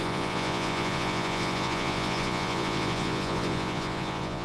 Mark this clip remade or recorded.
remade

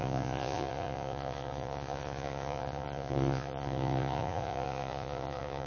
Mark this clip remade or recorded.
remade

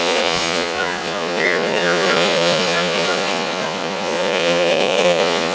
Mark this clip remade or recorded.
remade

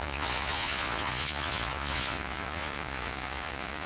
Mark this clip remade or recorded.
remade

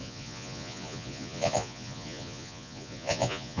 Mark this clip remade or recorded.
remade